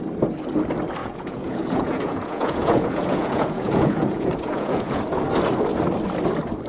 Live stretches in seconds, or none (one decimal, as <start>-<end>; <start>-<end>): 0.0-1.0; 5.0-6.7